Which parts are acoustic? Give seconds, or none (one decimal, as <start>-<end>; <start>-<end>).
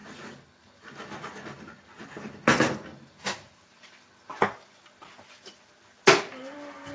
0.0-2.9; 4.5-6.9